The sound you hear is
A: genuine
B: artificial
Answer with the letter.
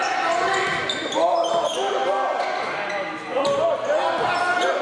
A